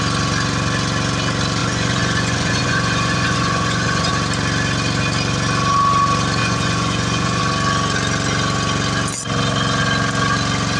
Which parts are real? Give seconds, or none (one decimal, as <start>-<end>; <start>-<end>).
0.0-1.6; 4.1-6.4; 7.4-10.8